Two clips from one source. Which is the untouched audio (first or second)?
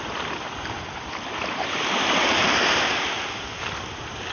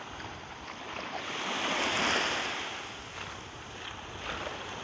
second